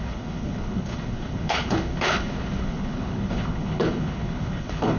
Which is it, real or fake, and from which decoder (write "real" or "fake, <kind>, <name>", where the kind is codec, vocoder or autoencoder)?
fake, codec, HILCodec